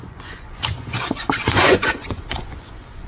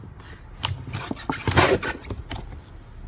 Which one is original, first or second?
second